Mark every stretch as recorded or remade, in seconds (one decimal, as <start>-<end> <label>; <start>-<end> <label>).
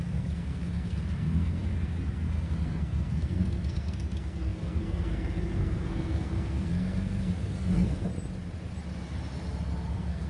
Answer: 0.0-8.1 remade; 8.1-9.9 recorded; 9.9-10.3 remade